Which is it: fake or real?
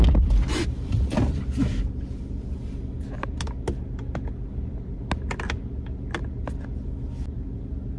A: real